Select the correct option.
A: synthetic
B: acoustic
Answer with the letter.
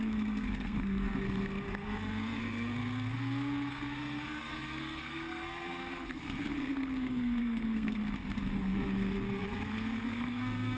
A